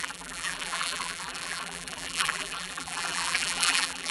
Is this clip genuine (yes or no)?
no